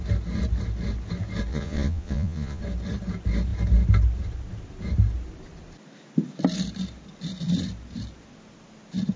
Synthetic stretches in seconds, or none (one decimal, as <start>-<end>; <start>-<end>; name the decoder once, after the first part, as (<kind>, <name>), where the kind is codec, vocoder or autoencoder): 1.5-2.6 (vocoder, Vocos)